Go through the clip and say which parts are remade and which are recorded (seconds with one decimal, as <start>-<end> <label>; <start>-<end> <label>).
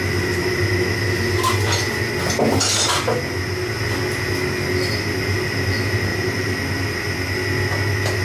0.0-6.1 recorded; 6.1-6.6 remade; 6.6-8.2 recorded